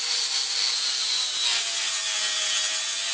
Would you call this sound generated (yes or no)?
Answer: no